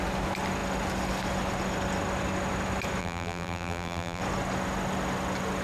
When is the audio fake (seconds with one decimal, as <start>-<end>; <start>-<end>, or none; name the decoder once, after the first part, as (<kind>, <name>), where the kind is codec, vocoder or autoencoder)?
3.0-4.2 (vocoder, BigVGAN v2)